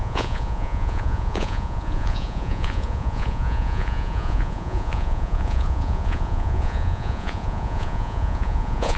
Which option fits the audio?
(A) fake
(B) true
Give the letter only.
A